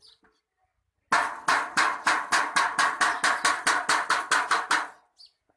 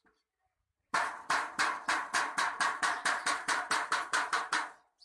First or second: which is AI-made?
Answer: second